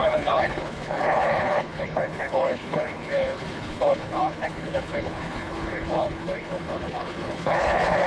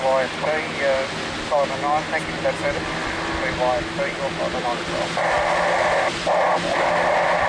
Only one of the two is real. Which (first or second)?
second